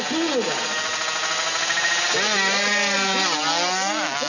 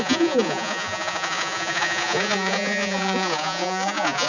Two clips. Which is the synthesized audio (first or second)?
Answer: second